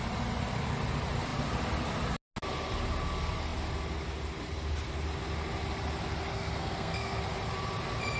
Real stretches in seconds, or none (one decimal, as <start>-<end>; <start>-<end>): 0.0-6.3; 7.2-8.2